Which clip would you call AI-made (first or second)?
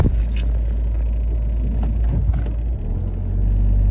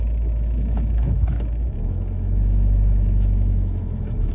second